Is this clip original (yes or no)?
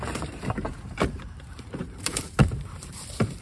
no